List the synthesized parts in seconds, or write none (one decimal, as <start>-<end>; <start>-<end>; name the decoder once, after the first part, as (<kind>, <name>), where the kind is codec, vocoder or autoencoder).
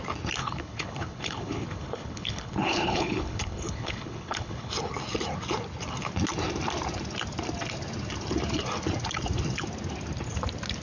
0.4-4.7 (codec, HILCodec)